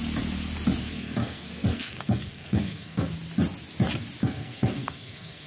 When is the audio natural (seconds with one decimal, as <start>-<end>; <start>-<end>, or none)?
0.0-0.8; 3.1-4.2